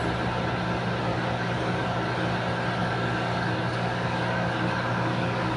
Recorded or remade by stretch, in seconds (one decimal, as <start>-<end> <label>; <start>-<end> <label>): 0.0-1.1 recorded; 1.1-2.1 remade; 2.1-2.8 recorded; 2.8-5.6 remade